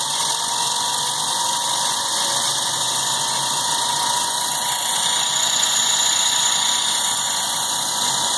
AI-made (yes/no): yes